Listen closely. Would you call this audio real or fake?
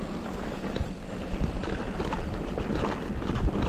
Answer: real